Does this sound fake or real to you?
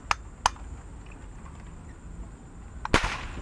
real